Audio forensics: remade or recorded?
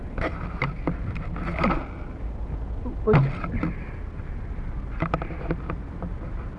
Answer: recorded